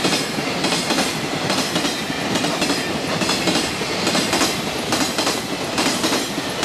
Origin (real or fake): fake